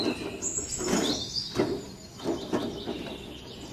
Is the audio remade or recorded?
recorded